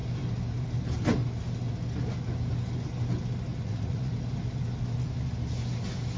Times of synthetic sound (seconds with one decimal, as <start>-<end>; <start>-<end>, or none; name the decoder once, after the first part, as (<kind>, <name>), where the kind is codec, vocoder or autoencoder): 3.5-4.1 (vocoder, Vocos)